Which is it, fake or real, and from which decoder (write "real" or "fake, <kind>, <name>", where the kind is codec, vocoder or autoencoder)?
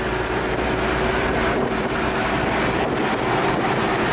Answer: real